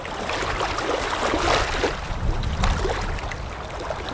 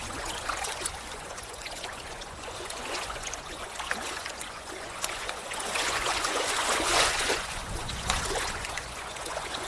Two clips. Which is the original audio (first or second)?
first